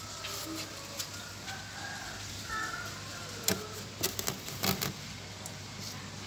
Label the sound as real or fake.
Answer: real